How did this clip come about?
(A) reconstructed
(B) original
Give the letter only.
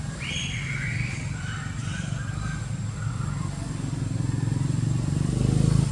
B